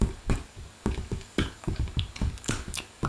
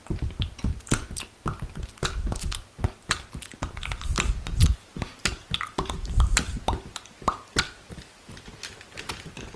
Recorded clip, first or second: second